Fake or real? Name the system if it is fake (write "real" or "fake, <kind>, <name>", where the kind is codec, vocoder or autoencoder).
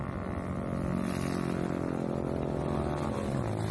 real